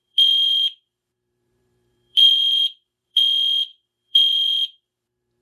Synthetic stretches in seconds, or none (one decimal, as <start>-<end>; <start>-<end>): 0.0-3.2; 3.7-5.4